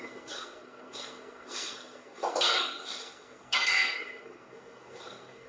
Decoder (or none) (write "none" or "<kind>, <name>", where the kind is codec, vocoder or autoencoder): codec, SNAC